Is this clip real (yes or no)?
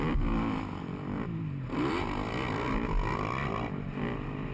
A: yes